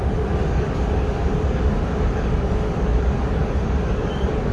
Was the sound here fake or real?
fake